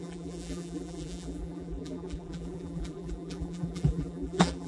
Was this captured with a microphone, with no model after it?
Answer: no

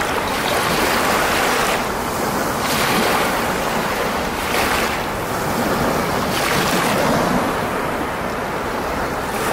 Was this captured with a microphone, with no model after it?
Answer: yes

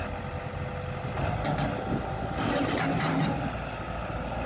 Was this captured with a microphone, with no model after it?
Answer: yes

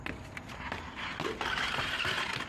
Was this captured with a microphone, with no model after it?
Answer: yes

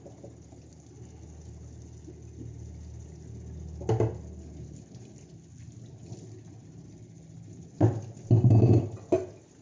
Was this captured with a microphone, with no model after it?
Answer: yes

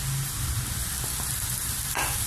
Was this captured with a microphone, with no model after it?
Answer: yes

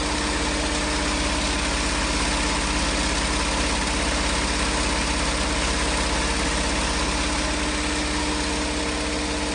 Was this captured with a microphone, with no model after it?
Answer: yes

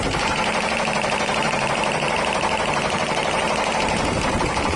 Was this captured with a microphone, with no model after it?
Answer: no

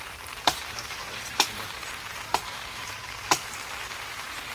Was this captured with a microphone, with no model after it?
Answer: no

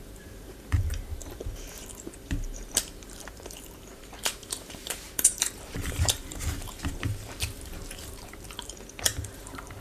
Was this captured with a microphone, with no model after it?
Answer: no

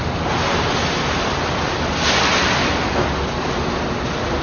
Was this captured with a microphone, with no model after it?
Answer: yes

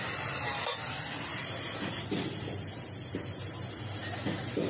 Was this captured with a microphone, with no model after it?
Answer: yes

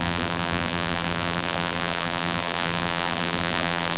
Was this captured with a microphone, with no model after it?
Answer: no